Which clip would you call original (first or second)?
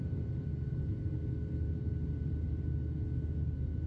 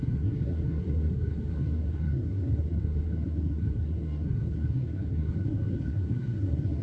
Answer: first